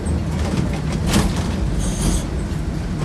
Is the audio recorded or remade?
remade